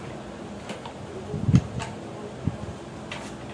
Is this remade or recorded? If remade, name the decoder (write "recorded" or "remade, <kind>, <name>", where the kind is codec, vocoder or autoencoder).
recorded